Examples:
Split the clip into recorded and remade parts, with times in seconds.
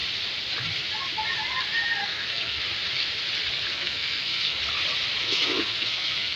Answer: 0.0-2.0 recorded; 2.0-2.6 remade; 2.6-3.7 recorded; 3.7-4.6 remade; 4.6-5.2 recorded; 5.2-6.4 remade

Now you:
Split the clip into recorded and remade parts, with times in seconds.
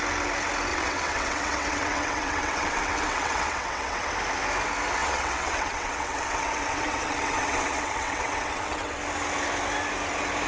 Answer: 0.0-0.7 recorded; 0.7-4.1 remade; 4.1-5.0 recorded; 5.0-9.0 remade; 9.0-10.5 recorded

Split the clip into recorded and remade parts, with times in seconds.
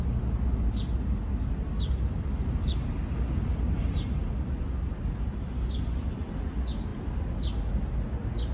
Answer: 0.0-8.5 recorded